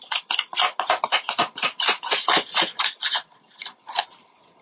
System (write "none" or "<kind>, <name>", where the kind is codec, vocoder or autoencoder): none